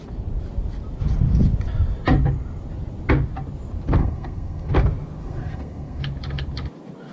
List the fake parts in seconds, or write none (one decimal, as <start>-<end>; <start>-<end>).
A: 4.0-4.7; 5.2-6.0